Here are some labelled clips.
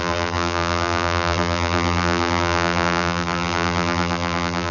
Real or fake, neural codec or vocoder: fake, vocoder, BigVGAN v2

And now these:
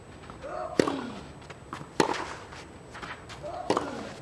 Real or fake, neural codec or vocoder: real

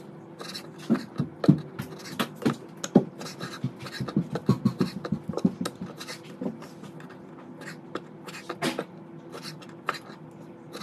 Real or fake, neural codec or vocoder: real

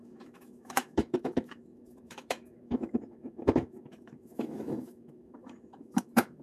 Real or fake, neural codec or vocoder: fake, autoencoder, DAC-VAE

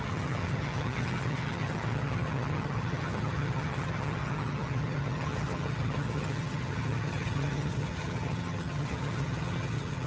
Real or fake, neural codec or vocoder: fake, vocoder, HiFi-GAN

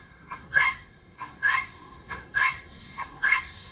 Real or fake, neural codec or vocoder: fake, codec, SNAC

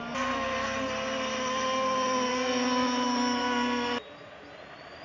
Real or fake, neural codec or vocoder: real